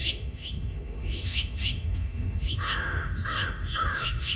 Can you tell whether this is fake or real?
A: fake